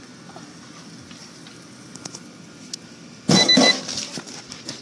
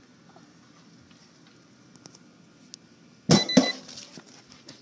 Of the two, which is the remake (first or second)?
first